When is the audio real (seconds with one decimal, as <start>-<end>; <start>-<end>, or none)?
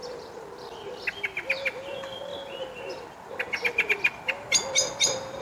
0.0-5.4